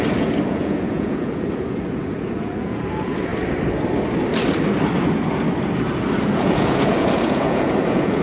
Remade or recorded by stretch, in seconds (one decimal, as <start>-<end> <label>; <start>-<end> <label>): 0.0-3.3 remade; 3.3-6.2 recorded; 6.2-8.2 remade